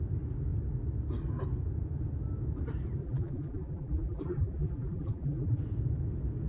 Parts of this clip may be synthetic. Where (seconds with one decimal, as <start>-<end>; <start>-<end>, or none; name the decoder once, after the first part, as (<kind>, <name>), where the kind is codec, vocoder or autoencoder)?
3.0-5.6 (vocoder, BigVGAN v2)